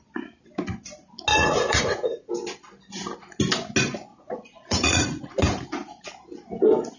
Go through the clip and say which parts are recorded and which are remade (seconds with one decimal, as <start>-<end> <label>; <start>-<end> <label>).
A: 0.0-1.3 recorded; 1.3-2.3 remade; 2.3-4.1 recorded; 4.1-5.3 remade; 5.3-7.0 recorded